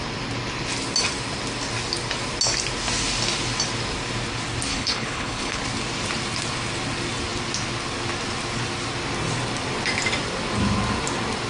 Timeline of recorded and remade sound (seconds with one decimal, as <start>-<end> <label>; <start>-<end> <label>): 0.0-4.7 recorded; 4.7-5.6 remade; 5.6-11.5 recorded